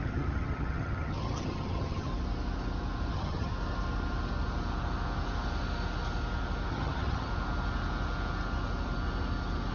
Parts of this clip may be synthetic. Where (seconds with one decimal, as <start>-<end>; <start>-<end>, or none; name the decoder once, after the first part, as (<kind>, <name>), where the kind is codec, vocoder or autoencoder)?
0.0-2.1 (vocoder, HiFi-GAN); 3.1-3.5; 6.7-7.3